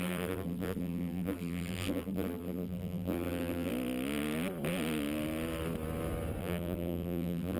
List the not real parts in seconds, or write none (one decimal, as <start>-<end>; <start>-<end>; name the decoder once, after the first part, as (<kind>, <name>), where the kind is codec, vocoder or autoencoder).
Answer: 0.0-3.7 (vocoder, BigVGAN v2); 6.4-7.6